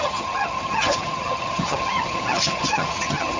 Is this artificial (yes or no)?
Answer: yes